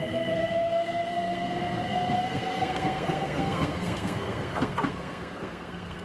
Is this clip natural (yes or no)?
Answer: no